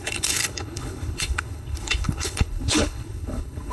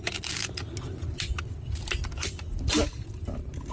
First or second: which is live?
second